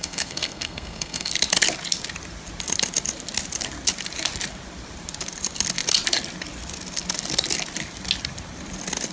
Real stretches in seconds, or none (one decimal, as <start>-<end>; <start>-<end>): 1.3-9.1